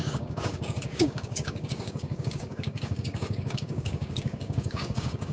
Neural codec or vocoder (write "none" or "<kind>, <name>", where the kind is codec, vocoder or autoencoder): codec, DAC